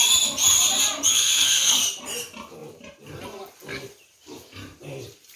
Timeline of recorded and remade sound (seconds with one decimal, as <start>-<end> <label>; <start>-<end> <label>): 0.0-1.1 recorded; 1.1-1.8 remade; 1.8-5.4 recorded